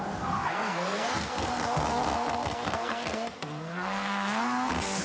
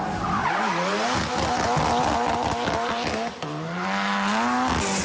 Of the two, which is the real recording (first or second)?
second